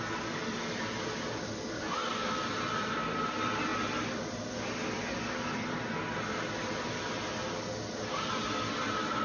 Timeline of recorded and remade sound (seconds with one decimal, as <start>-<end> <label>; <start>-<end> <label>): 0.0-9.2 recorded